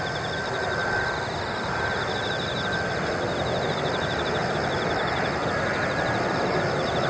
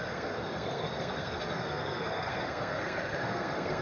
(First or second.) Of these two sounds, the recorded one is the first